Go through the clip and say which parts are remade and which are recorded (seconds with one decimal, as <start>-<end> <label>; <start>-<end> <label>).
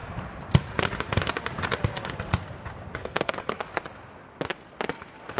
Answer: 0.0-3.0 recorded; 3.0-3.6 remade; 3.6-5.4 recorded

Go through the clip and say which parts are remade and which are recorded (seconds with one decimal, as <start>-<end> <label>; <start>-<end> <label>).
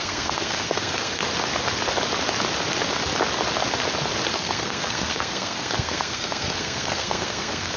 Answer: 0.0-1.2 remade; 1.2-4.3 recorded; 4.3-7.8 remade